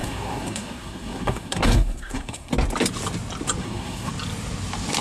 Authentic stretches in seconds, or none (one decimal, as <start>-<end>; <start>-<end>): 2.5-3.6; 4.1-5.0

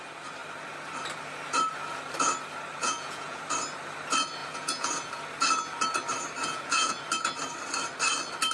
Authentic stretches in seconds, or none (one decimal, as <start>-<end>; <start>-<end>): 0.0-2.8; 3.4-4.4; 5.1-6.4; 7.0-8.5

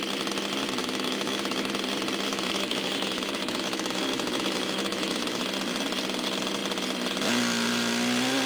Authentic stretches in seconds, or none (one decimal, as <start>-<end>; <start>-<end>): 0.0-0.8; 1.7-2.3; 5.4-8.5

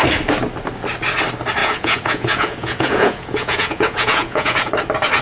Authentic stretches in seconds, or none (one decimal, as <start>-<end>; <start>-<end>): 0.0-1.6; 4.7-5.2

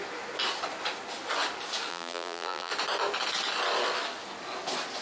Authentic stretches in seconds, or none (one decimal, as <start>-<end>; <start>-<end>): 0.0-1.9; 2.7-5.0

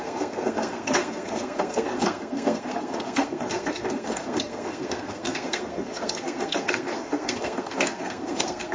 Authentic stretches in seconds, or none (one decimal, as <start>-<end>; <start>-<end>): none